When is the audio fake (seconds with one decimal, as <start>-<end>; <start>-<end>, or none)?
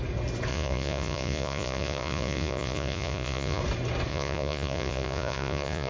0.5-3.6; 4.1-5.9